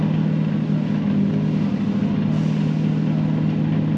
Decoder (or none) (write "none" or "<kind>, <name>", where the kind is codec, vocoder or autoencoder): none